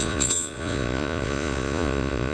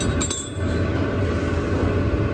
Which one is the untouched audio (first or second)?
second